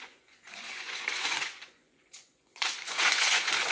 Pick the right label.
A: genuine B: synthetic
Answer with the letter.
B